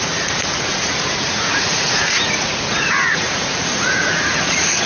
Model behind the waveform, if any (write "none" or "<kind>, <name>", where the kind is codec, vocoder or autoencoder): vocoder, Vocos